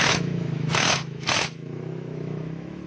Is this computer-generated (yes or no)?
yes